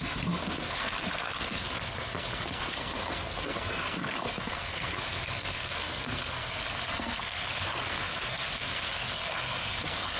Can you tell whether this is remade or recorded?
remade